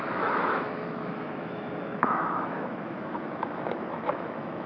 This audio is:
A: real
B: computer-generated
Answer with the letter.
B